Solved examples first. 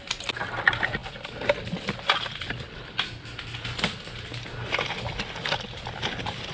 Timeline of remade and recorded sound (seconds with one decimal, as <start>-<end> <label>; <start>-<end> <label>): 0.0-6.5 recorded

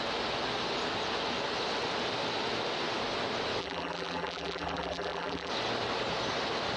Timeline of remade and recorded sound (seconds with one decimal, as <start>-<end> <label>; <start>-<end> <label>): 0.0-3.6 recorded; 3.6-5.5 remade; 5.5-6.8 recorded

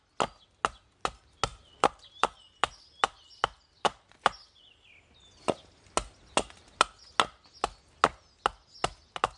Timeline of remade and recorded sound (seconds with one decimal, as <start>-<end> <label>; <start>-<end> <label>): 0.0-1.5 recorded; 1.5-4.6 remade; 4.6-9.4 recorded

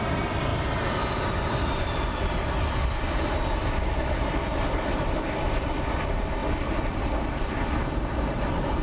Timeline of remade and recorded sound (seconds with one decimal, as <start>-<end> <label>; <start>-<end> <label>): 0.0-8.8 recorded

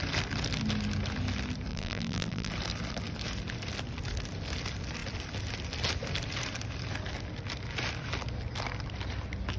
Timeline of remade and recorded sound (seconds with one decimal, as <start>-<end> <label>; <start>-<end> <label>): 0.0-1.7 recorded; 1.7-2.5 remade; 2.5-9.6 recorded

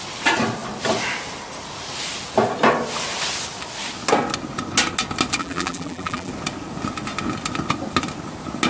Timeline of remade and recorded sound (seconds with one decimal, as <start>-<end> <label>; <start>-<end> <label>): 0.0-5.4 recorded; 5.4-6.3 remade; 6.3-8.7 recorded

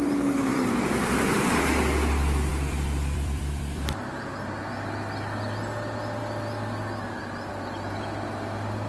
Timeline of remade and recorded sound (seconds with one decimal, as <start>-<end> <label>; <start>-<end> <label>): 0.0-0.5 recorded; 0.5-1.6 remade; 1.6-2.5 recorded; 2.5-4.4 remade; 4.4-8.9 recorded